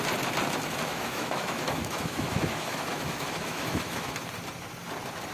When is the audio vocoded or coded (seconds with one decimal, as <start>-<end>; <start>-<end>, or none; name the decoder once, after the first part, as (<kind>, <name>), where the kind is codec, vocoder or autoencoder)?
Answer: 0.9-4.1 (autoencoder, DAC-VAE)